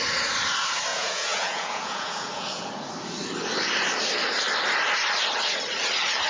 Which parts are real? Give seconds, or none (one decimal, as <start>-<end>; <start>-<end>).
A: 0.0-0.9; 2.7-6.3